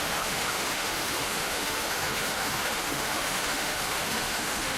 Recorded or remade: remade